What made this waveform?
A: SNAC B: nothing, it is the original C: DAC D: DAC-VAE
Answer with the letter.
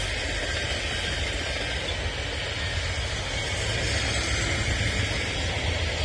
B